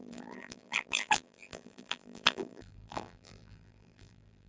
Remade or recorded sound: remade